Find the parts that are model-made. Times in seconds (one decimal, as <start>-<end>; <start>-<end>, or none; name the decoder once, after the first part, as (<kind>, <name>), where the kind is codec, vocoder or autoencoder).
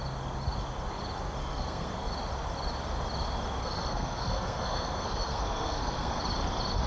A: 1.4-2.1 (codec, SNAC); 3.6-6.2